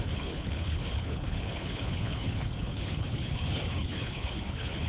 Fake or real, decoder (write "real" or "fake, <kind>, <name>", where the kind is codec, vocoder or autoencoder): fake, codec, HILCodec